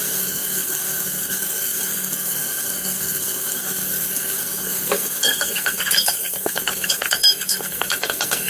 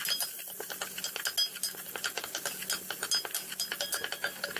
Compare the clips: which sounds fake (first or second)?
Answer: first